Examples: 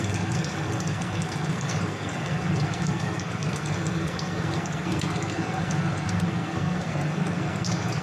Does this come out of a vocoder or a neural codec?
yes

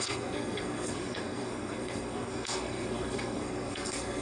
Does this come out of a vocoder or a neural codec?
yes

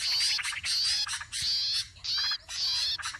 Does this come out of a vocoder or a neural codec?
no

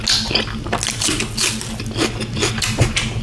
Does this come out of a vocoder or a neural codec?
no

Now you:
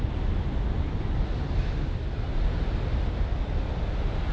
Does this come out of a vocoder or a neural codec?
no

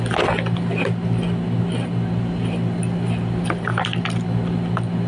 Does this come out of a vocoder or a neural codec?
no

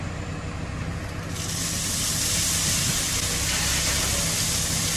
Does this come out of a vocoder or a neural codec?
no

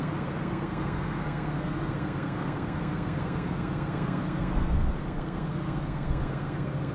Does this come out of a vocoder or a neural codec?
yes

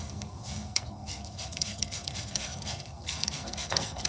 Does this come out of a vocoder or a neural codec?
yes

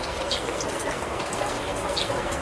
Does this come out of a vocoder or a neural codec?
yes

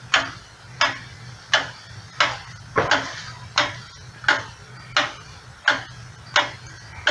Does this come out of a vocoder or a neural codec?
no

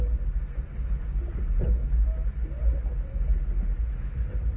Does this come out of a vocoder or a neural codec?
no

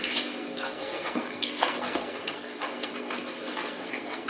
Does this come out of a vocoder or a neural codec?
yes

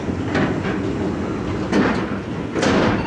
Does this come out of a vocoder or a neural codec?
no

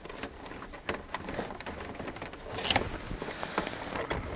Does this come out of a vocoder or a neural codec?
no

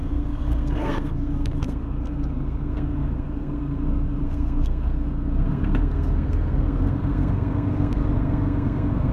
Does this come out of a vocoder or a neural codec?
yes